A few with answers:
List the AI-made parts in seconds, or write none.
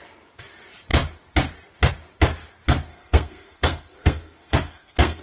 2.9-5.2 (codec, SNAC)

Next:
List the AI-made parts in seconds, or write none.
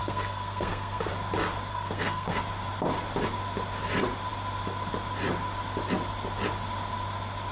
0.0-1.1 (codec, SNAC); 1.7-2.4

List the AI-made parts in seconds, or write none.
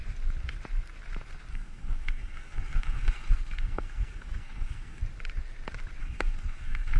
1.5-5.0 (codec, SNAC); 6.0-7.0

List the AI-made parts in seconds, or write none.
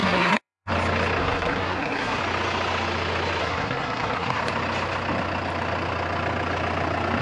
0.0-0.7 (codec, SNAC); 1.2-2.2; 3.4-4.4